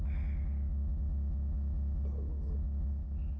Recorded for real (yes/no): yes